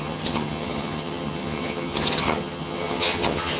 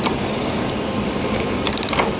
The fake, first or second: first